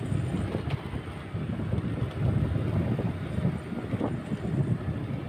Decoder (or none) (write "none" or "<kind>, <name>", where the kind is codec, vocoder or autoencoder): none